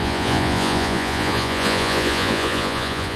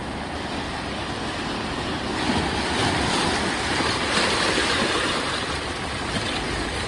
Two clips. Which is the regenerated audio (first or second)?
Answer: first